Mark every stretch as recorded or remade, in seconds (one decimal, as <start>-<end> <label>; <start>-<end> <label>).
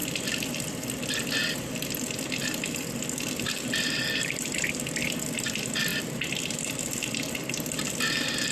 0.0-5.1 remade; 5.1-5.9 recorded; 5.9-8.5 remade